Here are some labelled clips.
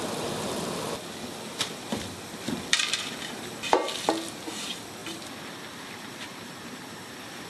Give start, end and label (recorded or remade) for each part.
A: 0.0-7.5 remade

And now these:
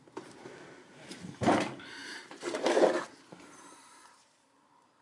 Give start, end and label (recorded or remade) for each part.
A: 0.0-5.0 remade

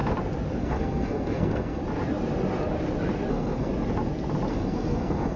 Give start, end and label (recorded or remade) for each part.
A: 0.0-0.6 recorded; 0.6-1.8 remade; 1.8-3.3 recorded; 3.3-3.7 remade; 3.7-4.5 recorded; 4.5-5.4 remade

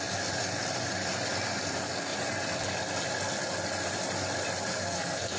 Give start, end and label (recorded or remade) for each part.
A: 0.0-4.7 recorded; 4.7-5.4 remade